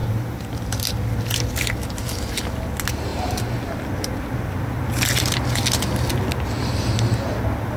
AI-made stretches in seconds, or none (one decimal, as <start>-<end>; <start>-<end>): 0.0-0.6